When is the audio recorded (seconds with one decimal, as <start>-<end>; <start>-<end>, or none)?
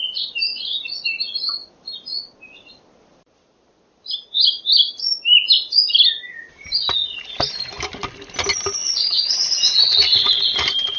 0.0-8.8; 10.4-11.0